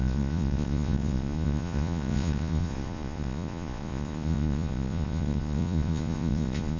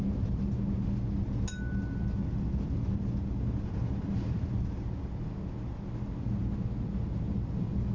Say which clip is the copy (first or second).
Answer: first